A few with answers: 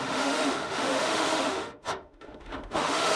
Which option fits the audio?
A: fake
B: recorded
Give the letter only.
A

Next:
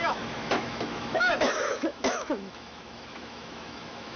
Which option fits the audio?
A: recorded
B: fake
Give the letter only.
B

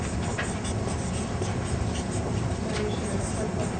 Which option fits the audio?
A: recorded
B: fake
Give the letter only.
A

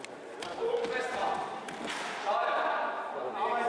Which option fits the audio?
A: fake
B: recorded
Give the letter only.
B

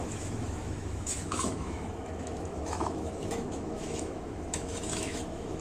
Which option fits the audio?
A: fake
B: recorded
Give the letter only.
A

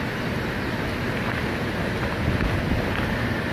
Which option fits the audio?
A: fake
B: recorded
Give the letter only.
B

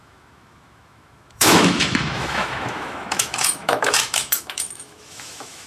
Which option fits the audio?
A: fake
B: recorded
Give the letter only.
A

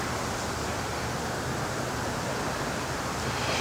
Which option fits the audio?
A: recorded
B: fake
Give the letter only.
A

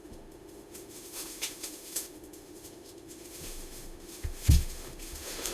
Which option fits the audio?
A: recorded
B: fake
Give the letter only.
B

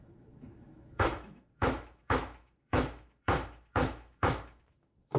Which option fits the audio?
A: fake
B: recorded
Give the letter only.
A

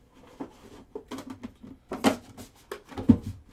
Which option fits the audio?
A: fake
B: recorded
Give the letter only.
B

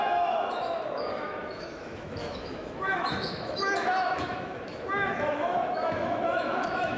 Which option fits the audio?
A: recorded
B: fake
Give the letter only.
B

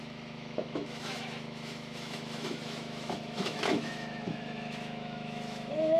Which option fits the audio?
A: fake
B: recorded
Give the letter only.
A